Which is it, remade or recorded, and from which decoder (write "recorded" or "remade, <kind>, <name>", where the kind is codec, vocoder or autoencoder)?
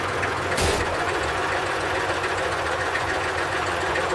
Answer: remade, vocoder, Vocos